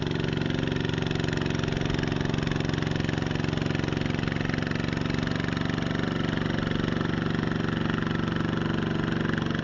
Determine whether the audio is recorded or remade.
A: recorded